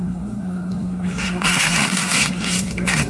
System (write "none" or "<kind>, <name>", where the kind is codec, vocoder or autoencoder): codec, SNAC